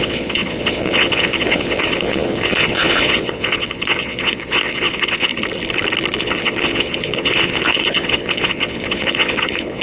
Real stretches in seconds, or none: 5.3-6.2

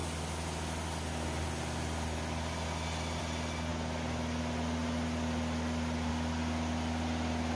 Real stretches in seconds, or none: 0.0-7.5

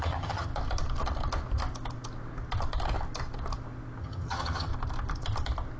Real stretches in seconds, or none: 0.5-4.0; 4.7-5.8

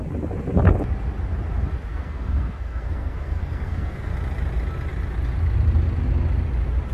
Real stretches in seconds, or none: 0.0-1.9; 4.1-6.9

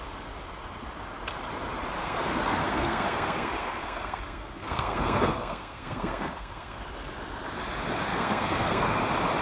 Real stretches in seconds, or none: 0.0-2.0; 6.8-8.1; 9.0-9.4